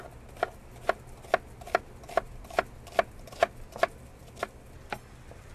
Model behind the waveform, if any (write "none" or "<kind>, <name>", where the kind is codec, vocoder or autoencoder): none